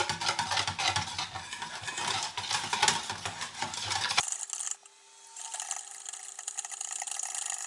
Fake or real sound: real